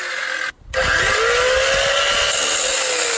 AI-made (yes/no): no